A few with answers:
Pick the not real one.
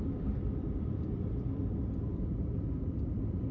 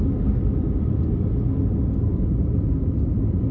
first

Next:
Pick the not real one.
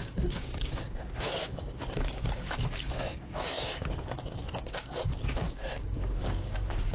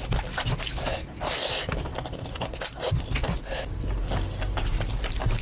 first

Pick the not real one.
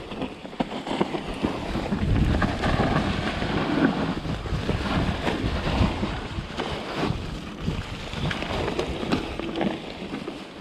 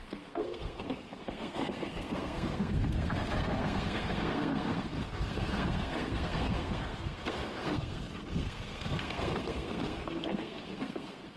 second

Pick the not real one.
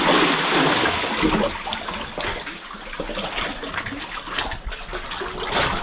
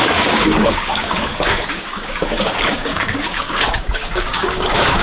second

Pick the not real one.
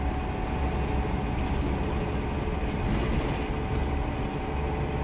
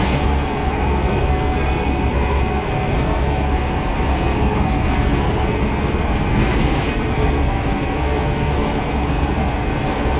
second